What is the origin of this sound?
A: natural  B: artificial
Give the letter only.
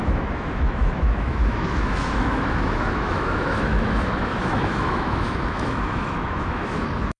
B